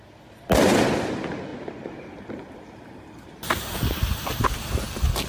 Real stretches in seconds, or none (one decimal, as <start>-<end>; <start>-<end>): 0.0-1.5; 4.7-5.3